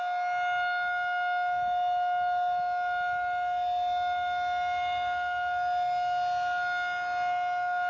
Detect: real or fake real